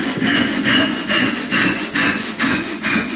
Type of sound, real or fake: fake